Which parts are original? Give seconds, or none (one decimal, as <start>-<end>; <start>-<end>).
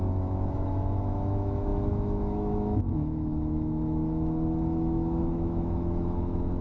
none